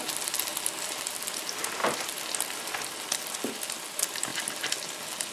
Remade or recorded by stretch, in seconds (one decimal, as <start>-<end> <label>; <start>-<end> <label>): 0.0-5.3 recorded